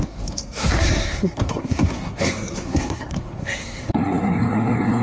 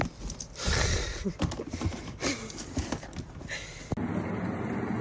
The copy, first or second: first